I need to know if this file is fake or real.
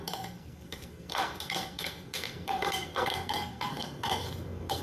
fake